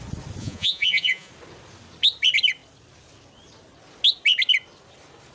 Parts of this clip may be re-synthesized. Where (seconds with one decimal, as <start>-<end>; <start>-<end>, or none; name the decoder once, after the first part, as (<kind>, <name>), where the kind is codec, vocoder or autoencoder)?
0.4-1.3 (vocoder, Vocos)